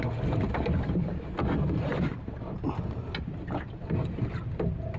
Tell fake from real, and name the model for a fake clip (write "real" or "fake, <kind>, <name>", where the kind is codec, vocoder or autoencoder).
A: real